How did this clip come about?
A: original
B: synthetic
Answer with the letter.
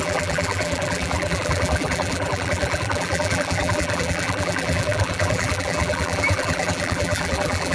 B